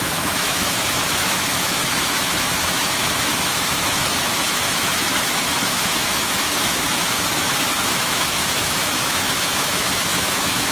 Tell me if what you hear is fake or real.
fake